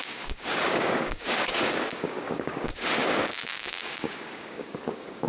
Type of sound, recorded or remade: remade